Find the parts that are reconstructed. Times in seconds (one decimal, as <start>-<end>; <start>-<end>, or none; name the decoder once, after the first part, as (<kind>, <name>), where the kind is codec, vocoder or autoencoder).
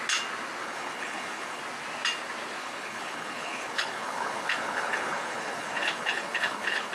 0.6-1.6 (codec, HILCodec); 2.6-6.9